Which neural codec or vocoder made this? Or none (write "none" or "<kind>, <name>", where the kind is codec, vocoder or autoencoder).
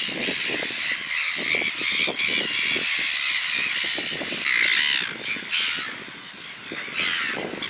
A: none